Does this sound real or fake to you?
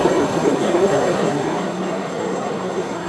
fake